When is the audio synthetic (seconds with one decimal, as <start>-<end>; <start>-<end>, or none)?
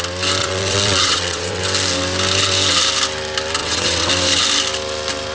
0.4-1.6; 3.6-4.1